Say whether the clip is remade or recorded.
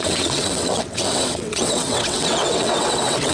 remade